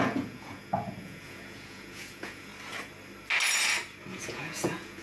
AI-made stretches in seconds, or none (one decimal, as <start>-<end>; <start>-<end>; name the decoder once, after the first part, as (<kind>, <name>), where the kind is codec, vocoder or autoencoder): 0.0-2.5 (vocoder, Vocos); 4.1-5.0